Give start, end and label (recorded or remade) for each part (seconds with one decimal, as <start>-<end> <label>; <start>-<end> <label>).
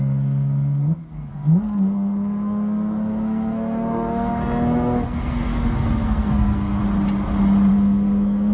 0.0-6.8 remade; 6.8-7.7 recorded; 7.7-8.5 remade